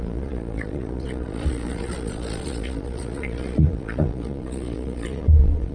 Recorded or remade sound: remade